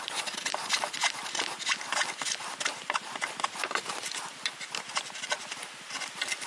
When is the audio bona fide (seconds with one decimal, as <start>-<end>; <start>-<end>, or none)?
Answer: 0.0-6.5